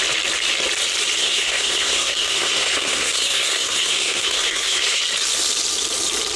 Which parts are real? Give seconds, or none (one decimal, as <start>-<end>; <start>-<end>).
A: 0.0-1.2; 5.0-6.4